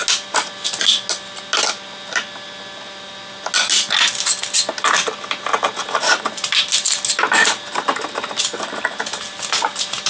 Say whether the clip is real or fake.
real